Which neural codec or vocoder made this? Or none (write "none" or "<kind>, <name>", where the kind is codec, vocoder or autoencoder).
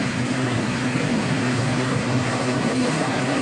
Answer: codec, SNAC